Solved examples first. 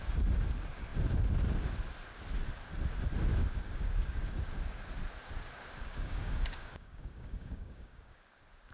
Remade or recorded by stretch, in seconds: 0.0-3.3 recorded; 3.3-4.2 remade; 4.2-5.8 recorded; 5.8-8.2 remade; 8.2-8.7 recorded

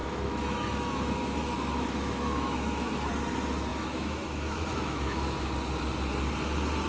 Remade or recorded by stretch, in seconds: 0.0-3.1 remade; 3.1-3.7 recorded; 3.7-5.5 remade; 5.5-6.9 recorded

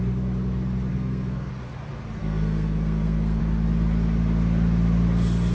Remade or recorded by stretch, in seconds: 0.0-0.9 recorded; 0.9-1.5 remade; 1.5-2.2 recorded; 2.2-3.4 remade; 3.4-5.5 recorded

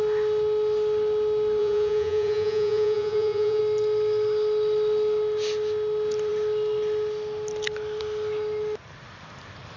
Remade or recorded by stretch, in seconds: 0.0-1.6 recorded; 1.6-3.6 remade; 3.6-9.8 recorded

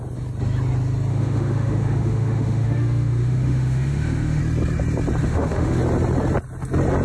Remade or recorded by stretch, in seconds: 0.0-1.1 recorded; 1.1-4.4 remade; 4.4-5.2 recorded; 5.2-5.8 remade; 5.8-7.0 recorded

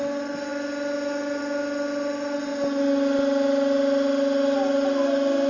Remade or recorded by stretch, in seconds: 0.0-5.5 recorded

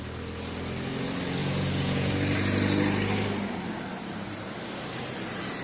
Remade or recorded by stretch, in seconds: 0.0-1.4 recorded; 1.4-2.1 remade; 2.1-5.6 recorded

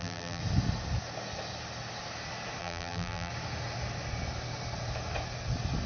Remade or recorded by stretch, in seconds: 0.0-0.4 remade; 0.4-2.6 recorded; 2.6-3.3 remade; 3.3-5.9 recorded